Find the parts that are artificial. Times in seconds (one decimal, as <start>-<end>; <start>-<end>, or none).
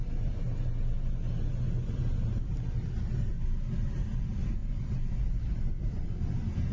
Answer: 4.6-5.1